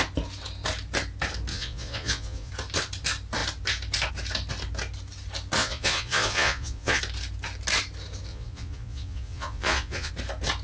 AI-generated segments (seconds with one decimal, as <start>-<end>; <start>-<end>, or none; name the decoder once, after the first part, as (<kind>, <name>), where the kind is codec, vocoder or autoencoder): 1.5-2.5 (vocoder, Vocos); 5.6-7.0; 8.3-10.1